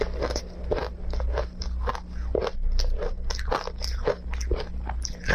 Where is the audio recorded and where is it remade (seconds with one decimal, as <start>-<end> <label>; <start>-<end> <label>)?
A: 0.0-5.3 recorded